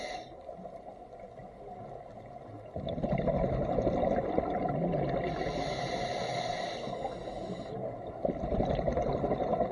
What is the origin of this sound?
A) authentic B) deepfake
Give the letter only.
A